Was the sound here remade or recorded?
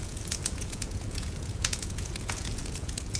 remade